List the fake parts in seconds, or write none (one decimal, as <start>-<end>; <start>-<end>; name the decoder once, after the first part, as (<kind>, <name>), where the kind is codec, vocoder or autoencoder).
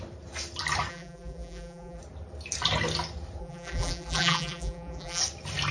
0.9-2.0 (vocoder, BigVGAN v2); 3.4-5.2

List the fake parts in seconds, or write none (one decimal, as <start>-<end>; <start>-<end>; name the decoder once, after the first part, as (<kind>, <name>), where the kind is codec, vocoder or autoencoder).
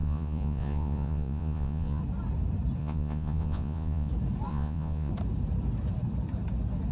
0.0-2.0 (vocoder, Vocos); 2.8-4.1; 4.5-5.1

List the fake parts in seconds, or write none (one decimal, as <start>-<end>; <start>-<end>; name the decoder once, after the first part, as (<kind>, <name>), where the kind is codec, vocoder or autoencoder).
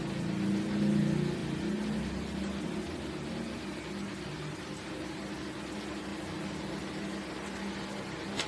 none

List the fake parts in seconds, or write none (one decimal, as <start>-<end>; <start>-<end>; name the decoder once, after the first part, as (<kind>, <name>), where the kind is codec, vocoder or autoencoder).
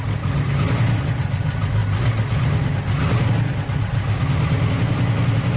none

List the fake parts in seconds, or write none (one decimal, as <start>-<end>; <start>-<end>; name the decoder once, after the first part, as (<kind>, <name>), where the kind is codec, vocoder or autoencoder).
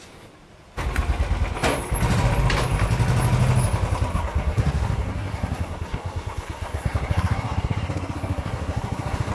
4.1-9.3 (codec, SNAC)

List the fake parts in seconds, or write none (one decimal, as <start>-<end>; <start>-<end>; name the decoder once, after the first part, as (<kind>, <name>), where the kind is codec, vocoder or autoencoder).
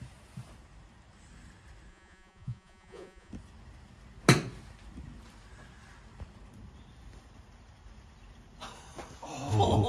1.9-3.3 (vocoder, Vocos)